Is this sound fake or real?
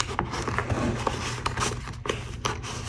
real